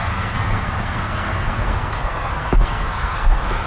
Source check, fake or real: fake